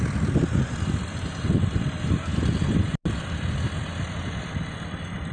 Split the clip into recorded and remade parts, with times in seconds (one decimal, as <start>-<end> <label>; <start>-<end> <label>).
0.0-5.3 recorded